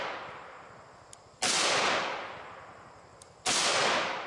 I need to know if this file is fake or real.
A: real